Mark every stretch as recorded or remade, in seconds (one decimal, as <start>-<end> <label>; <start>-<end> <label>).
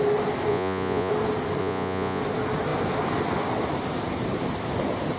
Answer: 0.0-0.5 recorded; 0.5-1.1 remade; 1.1-1.6 recorded; 1.6-2.2 remade; 2.2-5.2 recorded